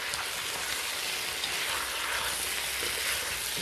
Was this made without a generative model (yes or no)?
yes